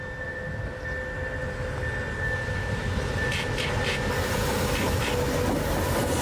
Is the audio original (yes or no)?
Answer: yes